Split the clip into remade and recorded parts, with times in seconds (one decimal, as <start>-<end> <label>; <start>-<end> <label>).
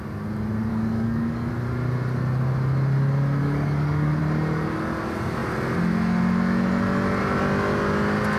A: 0.0-0.7 recorded; 0.7-1.5 remade; 1.5-3.4 recorded; 3.4-4.2 remade; 4.2-8.4 recorded